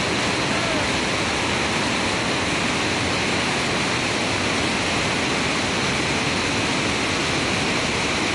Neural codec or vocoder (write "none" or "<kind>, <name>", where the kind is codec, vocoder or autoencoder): none